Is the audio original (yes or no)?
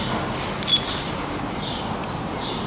yes